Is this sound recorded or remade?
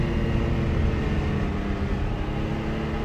recorded